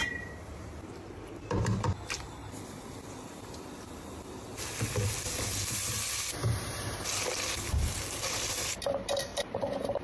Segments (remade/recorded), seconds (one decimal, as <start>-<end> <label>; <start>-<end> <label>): 0.0-9.3 recorded; 9.3-10.0 remade